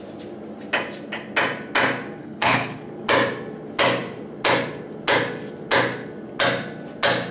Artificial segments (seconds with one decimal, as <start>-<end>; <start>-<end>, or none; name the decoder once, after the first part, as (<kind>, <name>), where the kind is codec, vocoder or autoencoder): 2.2-2.9 (codec, HILCodec)

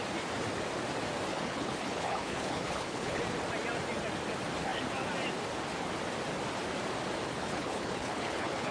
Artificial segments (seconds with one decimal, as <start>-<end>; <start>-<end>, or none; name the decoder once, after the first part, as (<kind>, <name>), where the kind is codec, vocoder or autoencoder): 1.3-3.2 (codec, HILCodec); 7.3-8.7

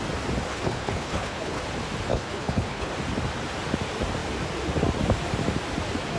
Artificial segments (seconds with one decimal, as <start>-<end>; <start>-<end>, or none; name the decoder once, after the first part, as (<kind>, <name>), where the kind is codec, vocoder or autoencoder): 0.5-1.6 (codec, HILCodec); 2.1-2.9

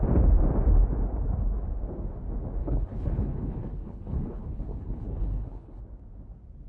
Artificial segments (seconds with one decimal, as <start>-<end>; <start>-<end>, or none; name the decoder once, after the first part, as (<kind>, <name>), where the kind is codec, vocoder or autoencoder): 2.6-5.8 (codec, HILCodec)

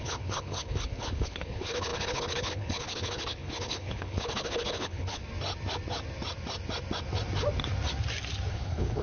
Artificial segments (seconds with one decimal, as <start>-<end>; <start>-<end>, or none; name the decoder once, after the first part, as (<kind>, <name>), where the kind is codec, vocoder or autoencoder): 0.0-5.2 (codec, HILCodec); 8.5-9.0

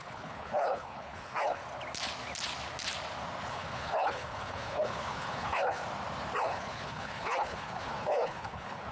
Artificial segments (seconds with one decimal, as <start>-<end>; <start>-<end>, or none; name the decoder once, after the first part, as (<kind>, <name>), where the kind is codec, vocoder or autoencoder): 0.0-1.6 (codec, HILCodec); 3.4-5.8; 6.4-8.9

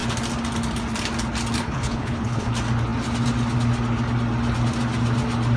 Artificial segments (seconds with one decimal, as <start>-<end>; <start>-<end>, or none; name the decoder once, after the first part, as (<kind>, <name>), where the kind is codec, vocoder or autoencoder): 1.6-2.5 (codec, HILCodec)